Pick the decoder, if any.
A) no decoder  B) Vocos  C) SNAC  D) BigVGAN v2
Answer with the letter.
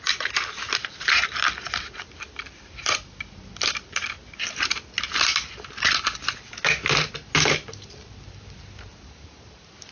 A